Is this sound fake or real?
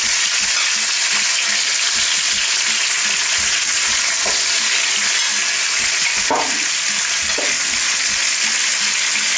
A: real